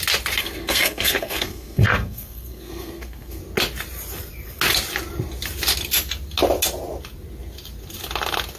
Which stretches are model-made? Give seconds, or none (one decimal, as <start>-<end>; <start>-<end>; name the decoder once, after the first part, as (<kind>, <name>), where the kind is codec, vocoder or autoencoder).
0.4-3.4 (codec, SNAC)